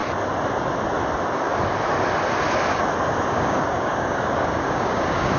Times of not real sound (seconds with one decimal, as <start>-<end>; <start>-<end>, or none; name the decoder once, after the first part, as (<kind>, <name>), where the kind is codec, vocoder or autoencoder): 3.2-5.4 (codec, DAC)